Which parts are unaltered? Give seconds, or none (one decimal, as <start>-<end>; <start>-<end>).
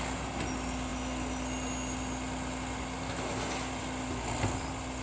0.0-5.0